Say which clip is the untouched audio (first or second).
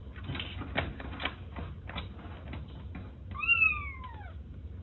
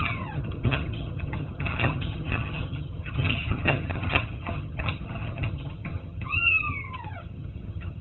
first